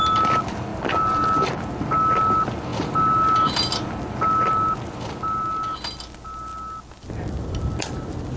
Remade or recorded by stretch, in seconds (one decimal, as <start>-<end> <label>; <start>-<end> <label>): 0.0-8.4 recorded